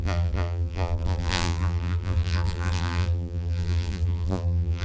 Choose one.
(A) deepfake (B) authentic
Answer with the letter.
A